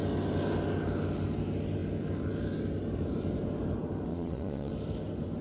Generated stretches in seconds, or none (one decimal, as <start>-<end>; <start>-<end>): 4.1-4.7